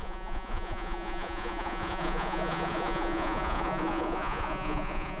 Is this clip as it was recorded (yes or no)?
no